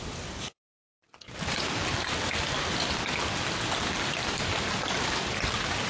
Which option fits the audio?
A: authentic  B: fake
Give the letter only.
A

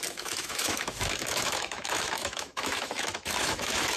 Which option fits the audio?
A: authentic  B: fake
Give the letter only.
B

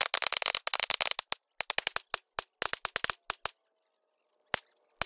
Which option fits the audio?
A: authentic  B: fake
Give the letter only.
A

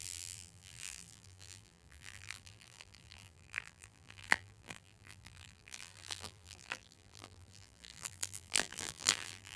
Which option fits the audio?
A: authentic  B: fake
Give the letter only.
B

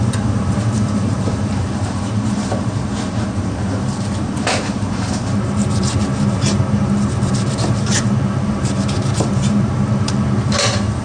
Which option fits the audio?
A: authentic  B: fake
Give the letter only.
B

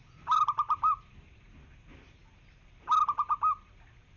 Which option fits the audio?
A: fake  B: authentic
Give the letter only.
A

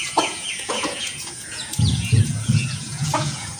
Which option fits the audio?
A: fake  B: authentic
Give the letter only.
A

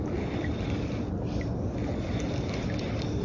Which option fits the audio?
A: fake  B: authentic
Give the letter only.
B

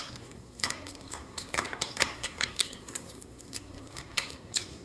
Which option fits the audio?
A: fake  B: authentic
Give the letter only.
A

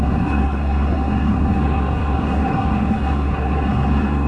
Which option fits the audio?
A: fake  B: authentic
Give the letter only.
A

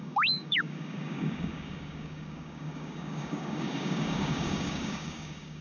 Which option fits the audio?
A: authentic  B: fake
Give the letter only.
B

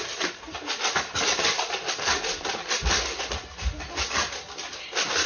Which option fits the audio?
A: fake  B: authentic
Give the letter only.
B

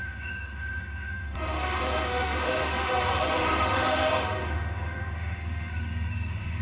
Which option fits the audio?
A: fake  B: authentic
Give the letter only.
A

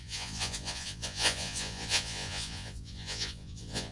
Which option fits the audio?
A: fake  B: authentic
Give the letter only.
A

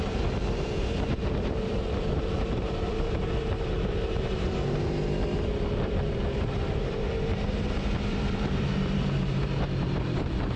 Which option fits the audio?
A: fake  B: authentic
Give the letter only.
A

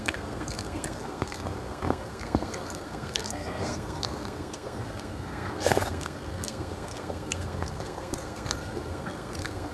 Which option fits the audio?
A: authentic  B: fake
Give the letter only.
B